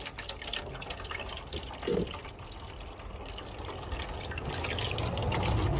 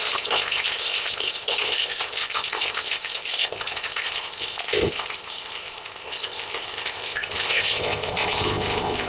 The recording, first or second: first